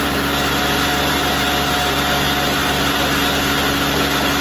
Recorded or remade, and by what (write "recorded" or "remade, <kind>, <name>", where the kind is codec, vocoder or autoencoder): recorded